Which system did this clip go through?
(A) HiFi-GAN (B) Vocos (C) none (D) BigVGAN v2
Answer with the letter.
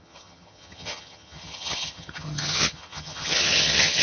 A